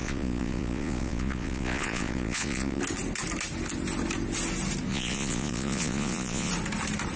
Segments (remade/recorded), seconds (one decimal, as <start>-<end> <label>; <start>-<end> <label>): 0.0-2.8 remade; 2.8-4.9 recorded; 4.9-6.5 remade; 6.5-7.2 recorded